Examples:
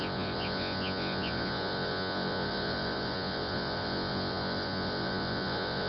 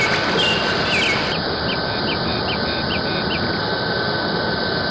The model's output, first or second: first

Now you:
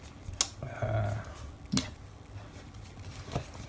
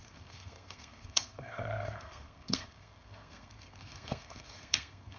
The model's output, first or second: second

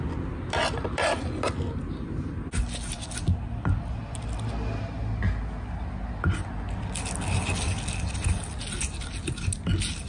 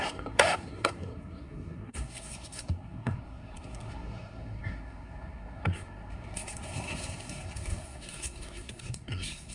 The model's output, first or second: second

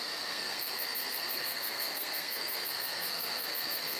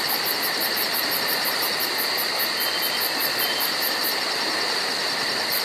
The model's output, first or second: first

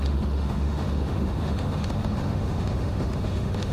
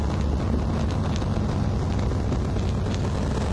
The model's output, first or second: first